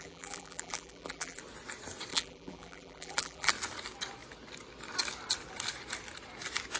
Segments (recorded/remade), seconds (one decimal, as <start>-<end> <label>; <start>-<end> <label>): 0.0-1.4 remade; 1.4-2.1 recorded; 2.1-3.5 remade; 3.5-6.8 recorded